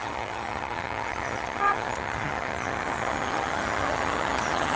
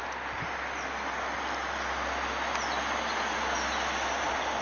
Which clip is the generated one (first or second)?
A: first